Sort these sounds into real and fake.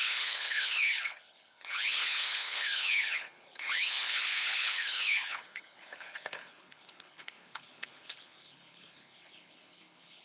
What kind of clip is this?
fake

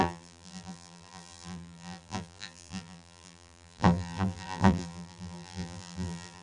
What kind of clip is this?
fake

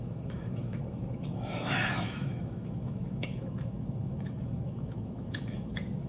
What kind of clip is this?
fake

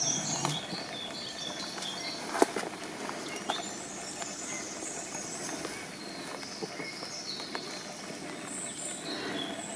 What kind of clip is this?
real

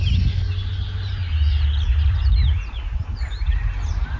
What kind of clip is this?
real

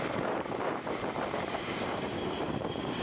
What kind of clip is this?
fake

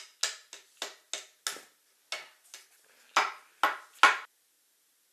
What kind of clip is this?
real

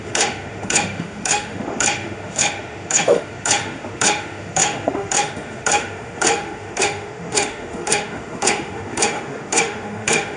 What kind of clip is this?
fake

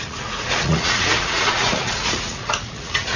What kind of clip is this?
fake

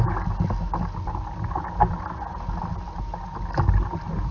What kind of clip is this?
real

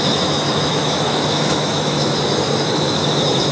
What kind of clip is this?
fake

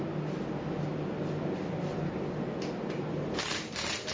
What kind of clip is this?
real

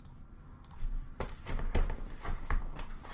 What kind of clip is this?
real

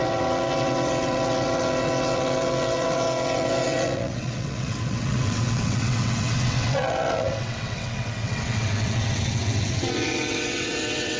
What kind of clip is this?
fake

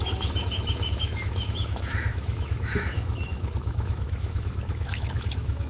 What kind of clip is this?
fake